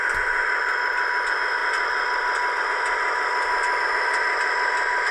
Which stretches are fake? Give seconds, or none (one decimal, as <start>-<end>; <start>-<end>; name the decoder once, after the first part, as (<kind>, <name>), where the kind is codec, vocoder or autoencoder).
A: none